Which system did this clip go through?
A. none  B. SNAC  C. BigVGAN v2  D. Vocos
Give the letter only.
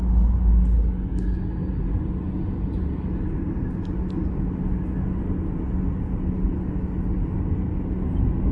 A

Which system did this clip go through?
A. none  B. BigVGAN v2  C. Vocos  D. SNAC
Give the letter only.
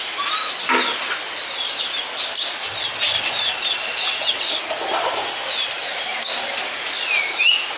A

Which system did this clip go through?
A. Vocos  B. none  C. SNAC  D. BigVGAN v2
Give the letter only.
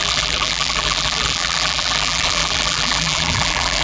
D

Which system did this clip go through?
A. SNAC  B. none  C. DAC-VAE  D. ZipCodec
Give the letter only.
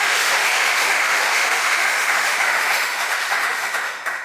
C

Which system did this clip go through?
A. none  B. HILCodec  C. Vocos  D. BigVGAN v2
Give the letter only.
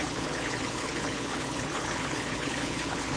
B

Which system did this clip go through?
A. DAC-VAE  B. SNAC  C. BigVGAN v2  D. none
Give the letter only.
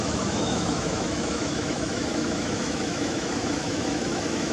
A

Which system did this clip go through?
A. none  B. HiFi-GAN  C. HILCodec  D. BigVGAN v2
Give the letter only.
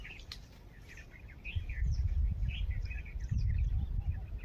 D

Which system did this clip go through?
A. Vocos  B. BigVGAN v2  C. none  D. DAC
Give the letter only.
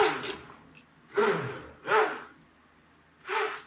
C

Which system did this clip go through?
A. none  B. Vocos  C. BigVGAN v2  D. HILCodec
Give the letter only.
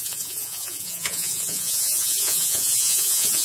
B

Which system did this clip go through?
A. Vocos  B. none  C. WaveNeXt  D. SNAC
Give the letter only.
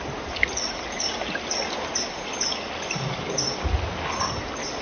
B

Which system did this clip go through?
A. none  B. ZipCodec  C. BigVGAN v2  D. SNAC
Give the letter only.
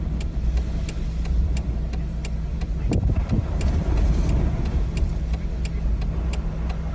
A